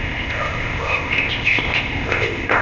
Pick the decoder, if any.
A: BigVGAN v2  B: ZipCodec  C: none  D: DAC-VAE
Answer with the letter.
B